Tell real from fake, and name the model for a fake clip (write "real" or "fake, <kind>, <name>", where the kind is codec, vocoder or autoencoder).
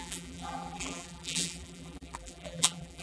fake, vocoder, BigVGAN v2